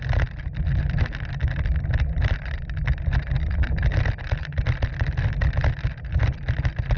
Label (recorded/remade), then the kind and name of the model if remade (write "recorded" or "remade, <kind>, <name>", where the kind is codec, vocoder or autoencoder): recorded